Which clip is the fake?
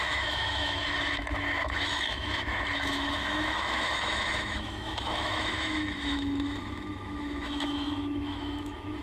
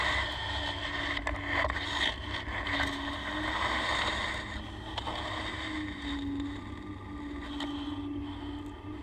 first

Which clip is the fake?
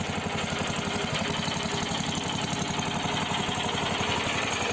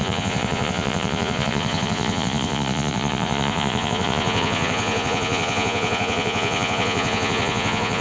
second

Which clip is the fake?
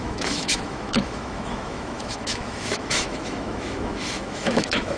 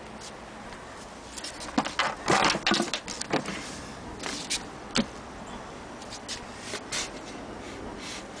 first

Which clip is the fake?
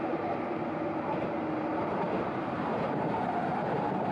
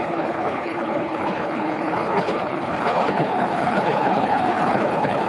second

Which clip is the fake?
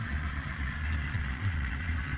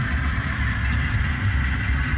first